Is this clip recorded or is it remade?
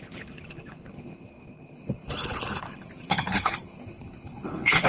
remade